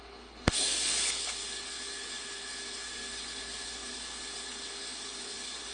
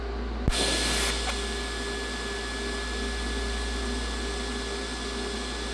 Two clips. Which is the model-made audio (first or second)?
first